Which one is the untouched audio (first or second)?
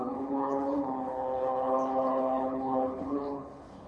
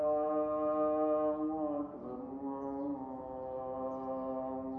second